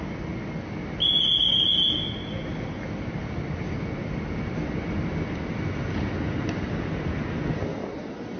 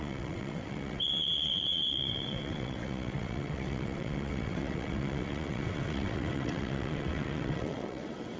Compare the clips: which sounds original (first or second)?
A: first